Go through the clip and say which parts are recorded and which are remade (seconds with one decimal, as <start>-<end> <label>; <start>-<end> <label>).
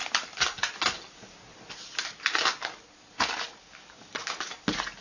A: 0.0-3.6 recorded; 3.6-4.5 remade; 4.5-5.0 recorded